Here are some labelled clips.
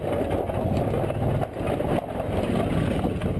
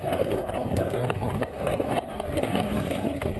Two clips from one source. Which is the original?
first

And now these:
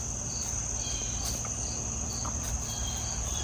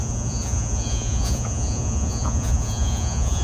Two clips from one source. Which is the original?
first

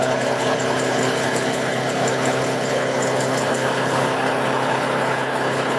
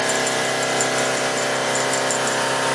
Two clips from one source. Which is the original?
second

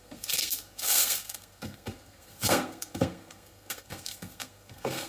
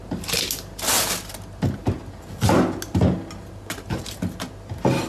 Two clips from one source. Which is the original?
second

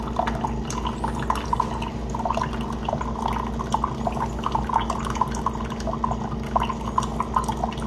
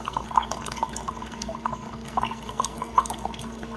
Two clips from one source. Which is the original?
first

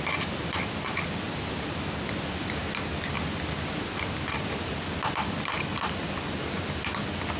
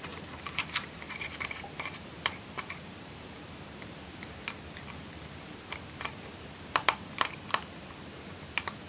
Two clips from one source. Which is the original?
first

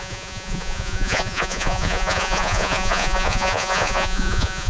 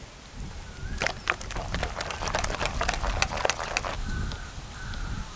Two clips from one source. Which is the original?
second